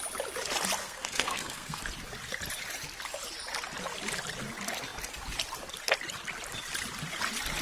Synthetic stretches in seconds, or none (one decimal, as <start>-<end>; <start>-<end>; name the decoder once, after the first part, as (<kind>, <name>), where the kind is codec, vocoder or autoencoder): 0.8-1.8 (codec, SNAC)